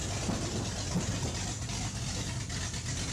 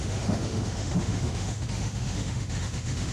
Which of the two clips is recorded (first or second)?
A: first